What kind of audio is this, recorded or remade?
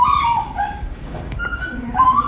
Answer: remade